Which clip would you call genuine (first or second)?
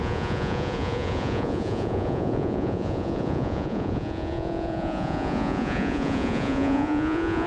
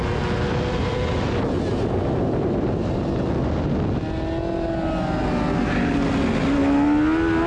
second